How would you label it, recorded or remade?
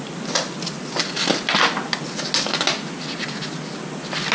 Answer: recorded